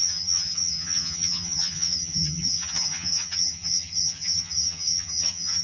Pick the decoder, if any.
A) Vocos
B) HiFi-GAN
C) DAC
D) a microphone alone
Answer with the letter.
B